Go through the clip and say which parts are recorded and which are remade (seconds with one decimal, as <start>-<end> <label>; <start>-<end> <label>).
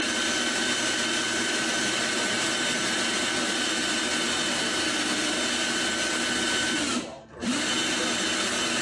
0.0-8.8 recorded